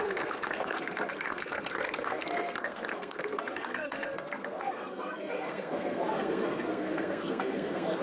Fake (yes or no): yes